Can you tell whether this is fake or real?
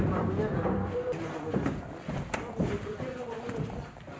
fake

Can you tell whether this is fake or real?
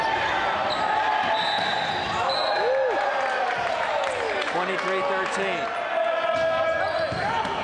real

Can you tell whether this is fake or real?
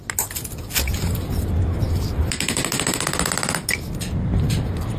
real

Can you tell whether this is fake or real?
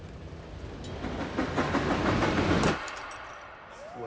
fake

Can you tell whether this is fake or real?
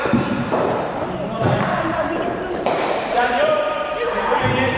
fake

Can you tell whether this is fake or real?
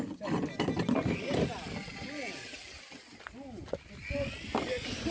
real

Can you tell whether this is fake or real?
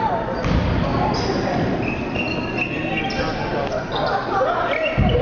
real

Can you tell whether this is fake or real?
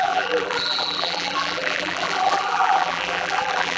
fake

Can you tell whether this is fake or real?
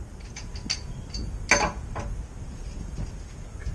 real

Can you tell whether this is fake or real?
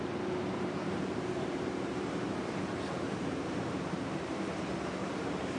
fake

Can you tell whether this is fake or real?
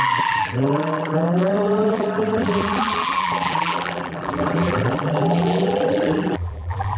fake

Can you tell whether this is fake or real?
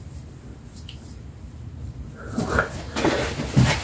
real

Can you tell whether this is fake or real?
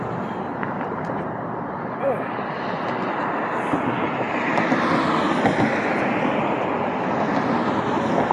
real